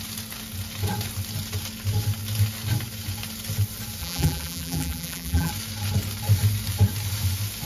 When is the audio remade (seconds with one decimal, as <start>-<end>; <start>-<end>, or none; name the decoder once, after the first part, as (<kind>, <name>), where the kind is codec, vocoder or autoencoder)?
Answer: 4.0-5.5 (vocoder, BigVGAN v2)